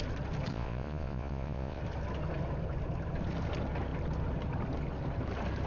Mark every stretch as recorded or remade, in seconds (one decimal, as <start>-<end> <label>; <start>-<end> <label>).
0.0-0.5 recorded; 0.5-1.8 remade; 1.8-5.7 recorded